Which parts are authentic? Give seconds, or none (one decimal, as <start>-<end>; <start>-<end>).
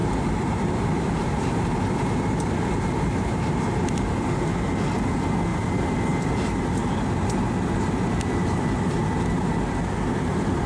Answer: 3.6-5.5; 6.6-10.7